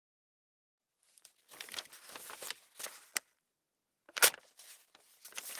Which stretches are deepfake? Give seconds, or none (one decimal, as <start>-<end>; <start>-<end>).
0.0-4.2; 4.7-5.6